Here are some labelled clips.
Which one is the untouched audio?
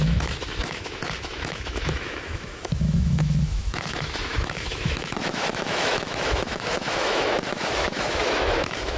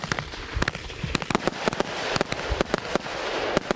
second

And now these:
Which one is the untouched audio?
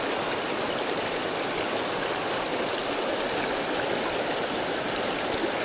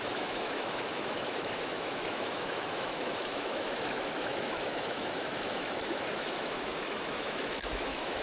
first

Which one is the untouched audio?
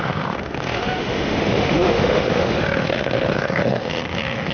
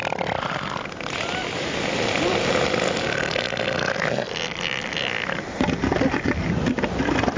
second